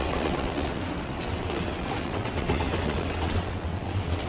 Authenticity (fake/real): fake